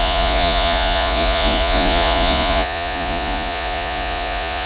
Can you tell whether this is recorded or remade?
remade